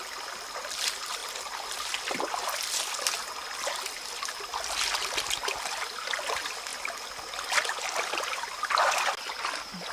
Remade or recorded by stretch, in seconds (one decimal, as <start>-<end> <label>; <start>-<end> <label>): 0.0-9.9 recorded